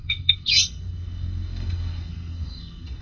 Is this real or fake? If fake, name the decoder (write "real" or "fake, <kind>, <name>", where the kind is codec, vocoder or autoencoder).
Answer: fake, codec, SNAC